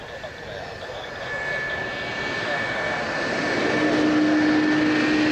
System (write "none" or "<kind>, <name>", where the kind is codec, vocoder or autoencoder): none